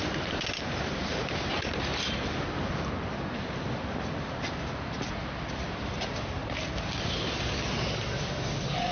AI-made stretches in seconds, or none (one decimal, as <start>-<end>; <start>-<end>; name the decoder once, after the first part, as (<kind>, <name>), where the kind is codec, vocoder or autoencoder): none